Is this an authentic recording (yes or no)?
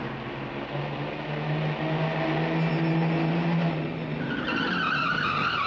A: yes